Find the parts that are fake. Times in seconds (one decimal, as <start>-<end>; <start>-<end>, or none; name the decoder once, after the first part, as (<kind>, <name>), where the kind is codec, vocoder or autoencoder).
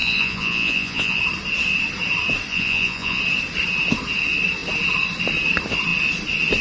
0.0-1.2 (vocoder, Vocos); 2.5-3.2